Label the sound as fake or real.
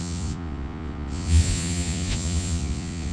fake